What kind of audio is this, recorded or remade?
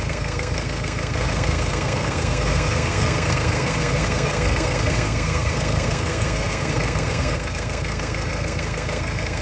remade